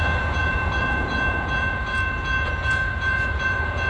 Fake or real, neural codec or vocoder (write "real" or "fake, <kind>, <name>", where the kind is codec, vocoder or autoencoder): fake, vocoder, Vocos